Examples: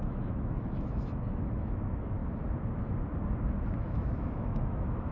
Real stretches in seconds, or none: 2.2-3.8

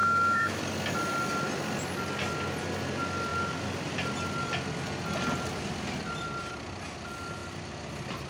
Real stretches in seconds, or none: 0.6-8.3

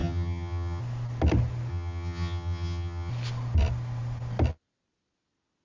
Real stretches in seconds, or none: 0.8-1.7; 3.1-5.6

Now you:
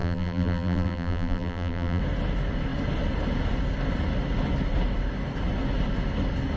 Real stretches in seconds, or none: 2.0-6.6

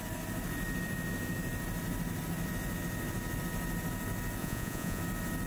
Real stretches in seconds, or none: 0.0-4.4; 5.0-5.5

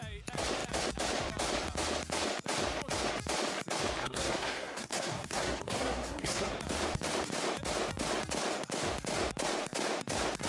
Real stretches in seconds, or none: 0.0-4.0; 6.5-10.5